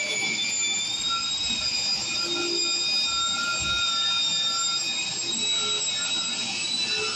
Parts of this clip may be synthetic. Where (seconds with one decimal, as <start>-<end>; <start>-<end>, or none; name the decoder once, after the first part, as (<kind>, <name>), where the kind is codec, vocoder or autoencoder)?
none